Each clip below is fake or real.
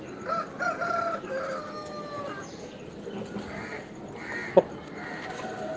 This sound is real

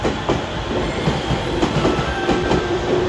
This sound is fake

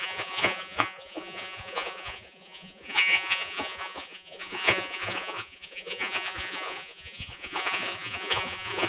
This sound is fake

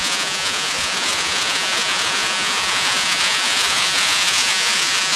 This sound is fake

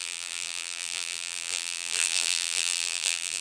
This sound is fake